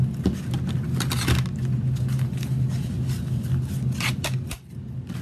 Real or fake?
real